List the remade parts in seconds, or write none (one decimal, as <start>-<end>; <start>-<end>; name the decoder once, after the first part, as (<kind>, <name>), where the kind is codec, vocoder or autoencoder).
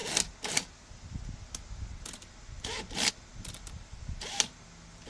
none